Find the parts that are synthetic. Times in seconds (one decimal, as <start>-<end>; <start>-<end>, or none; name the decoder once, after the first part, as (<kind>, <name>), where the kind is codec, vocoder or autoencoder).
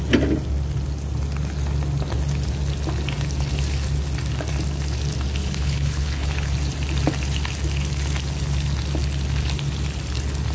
5.4-6.5 (codec, HILCodec)